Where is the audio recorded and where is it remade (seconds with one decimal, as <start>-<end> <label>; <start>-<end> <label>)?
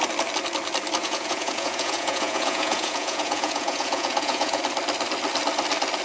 0.0-1.0 recorded; 1.0-4.6 remade; 4.6-6.0 recorded